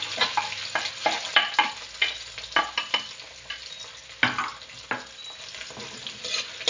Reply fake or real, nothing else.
real